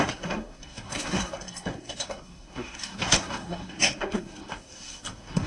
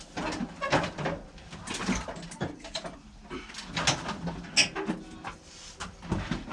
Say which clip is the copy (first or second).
first